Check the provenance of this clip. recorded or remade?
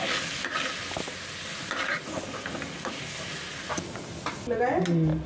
recorded